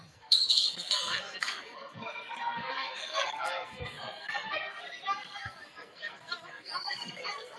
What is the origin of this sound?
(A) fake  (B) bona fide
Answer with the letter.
A